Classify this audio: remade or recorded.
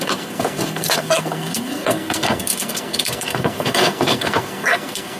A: remade